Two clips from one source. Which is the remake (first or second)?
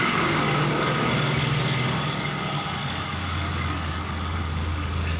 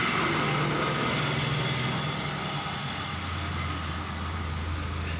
first